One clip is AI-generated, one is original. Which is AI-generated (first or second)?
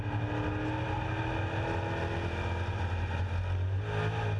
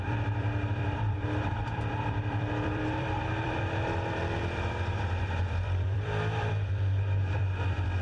second